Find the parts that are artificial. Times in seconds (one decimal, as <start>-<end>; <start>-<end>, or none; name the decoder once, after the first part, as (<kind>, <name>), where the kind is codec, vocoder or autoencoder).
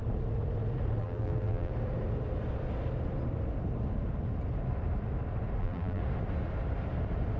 1.0-1.7 (vocoder, BigVGAN v2); 5.6-6.0